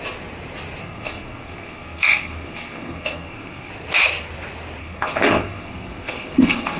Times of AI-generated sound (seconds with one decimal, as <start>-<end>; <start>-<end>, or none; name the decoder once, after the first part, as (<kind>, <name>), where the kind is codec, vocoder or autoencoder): 0.8-3.7 (codec, SNAC); 4.8-6.8